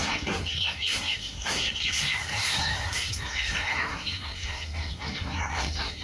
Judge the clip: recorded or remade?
remade